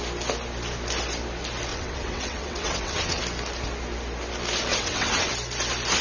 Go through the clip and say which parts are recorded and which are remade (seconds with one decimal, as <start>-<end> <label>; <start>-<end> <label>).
0.0-1.7 recorded; 1.7-3.2 remade; 3.2-4.7 recorded; 4.7-5.3 remade; 5.3-6.0 recorded